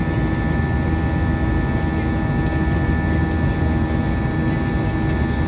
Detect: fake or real real